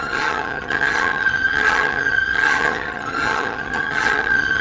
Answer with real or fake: fake